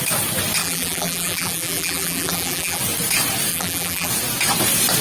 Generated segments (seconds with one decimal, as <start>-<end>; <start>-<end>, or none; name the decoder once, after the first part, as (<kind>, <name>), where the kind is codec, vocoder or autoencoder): 0.6-2.8 (vocoder, BigVGAN v2); 3.5-4.1